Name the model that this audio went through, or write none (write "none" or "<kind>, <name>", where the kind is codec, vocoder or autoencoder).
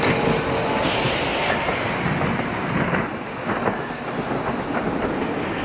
none